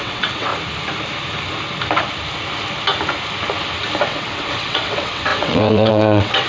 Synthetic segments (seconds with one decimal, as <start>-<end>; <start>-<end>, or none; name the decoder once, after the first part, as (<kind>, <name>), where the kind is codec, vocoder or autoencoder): 0.0-0.5 (vocoder, WaveNeXt); 4.0-6.5